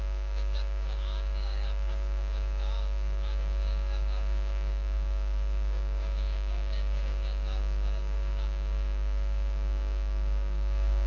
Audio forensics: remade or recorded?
remade